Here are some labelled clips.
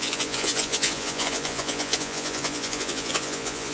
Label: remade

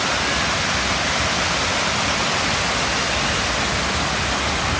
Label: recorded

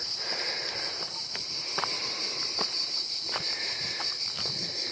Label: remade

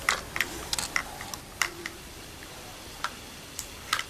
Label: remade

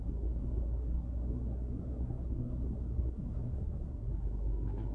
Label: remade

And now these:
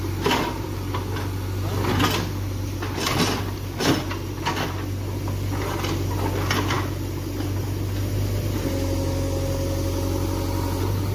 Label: recorded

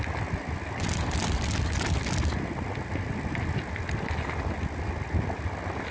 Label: recorded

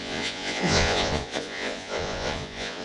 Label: remade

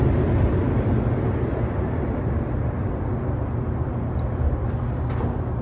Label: recorded